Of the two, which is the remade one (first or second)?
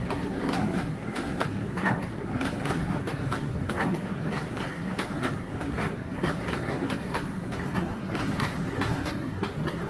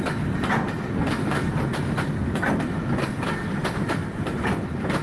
first